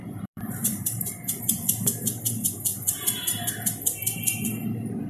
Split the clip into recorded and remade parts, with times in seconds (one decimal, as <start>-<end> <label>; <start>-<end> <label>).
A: 0.0-1.4 remade; 1.4-2.7 recorded; 2.7-3.5 remade; 3.5-5.1 recorded